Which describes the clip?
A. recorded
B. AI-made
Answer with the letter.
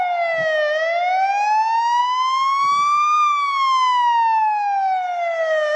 A